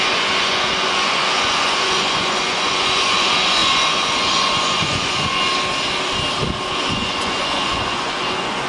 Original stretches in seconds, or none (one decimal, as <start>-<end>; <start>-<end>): 5.5-6.7